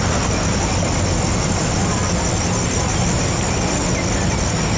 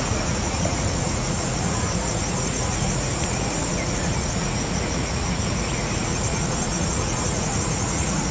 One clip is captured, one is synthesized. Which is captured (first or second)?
first